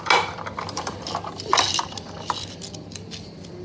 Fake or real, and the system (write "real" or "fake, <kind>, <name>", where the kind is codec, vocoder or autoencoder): real